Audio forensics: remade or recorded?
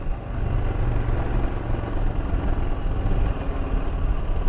recorded